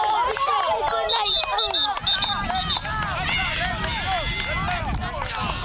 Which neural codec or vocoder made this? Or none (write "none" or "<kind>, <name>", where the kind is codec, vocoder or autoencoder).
none